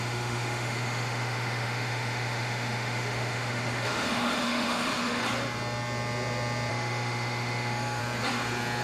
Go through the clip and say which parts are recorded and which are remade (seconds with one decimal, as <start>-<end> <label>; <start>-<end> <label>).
0.0-5.2 remade; 5.2-6.7 recorded; 6.7-8.0 remade; 8.0-8.8 recorded